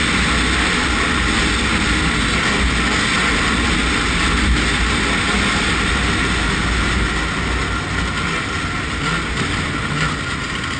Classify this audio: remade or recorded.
recorded